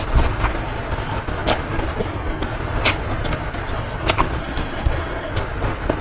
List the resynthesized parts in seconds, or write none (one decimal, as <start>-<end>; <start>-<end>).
4.4-5.3